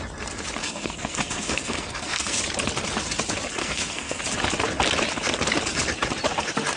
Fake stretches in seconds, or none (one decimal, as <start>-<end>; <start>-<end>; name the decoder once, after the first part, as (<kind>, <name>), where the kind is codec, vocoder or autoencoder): 0.6-2.4 (codec, SNAC); 3.6-4.2